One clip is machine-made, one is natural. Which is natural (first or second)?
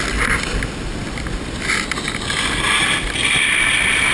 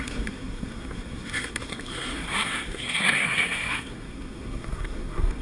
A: first